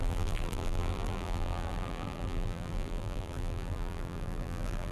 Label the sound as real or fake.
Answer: fake